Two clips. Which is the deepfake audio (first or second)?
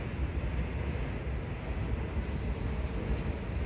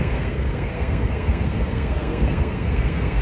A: second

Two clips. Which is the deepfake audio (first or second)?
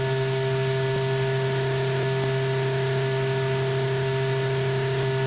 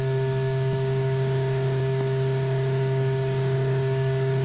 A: second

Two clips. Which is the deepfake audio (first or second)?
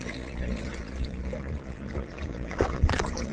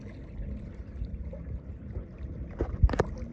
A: first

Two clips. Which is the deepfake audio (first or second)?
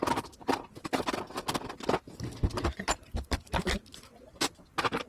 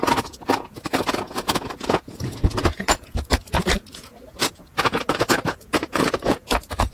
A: second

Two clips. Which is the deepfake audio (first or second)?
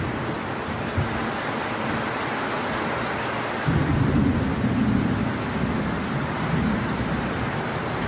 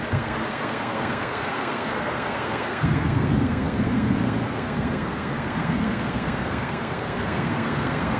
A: second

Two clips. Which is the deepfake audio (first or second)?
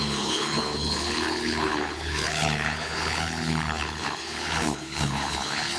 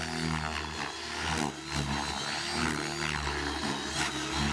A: first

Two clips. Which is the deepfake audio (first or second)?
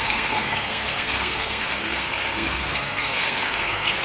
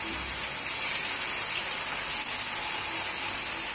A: first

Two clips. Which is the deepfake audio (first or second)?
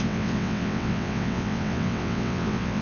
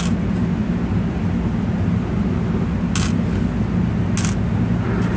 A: first